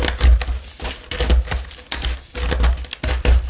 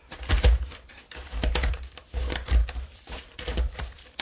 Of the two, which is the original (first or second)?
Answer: first